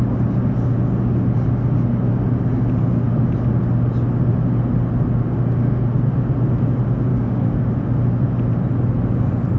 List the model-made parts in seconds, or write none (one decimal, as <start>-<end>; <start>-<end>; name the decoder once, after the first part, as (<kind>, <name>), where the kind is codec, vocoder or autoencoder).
7.1-7.7 (codec, DAC)